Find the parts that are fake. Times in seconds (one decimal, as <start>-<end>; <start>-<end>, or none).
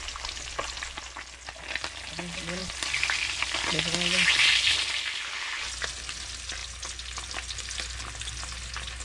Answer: none